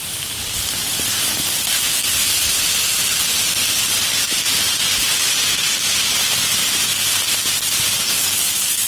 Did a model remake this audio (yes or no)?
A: yes